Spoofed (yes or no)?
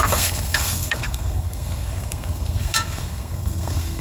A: yes